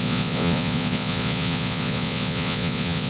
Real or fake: fake